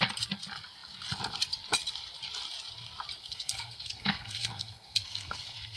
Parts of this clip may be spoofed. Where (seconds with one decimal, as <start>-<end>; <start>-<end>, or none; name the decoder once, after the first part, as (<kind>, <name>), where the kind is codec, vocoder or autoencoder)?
3.2-5.8 (codec, SNAC)